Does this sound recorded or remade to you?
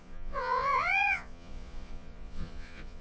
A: remade